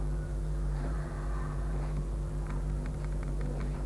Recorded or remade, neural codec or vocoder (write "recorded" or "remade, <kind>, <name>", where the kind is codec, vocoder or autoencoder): remade, vocoder, BigVGAN v2